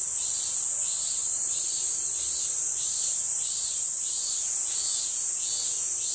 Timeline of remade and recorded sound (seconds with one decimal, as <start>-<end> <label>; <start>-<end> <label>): 0.0-1.2 recorded; 1.2-4.5 remade; 4.5-6.1 recorded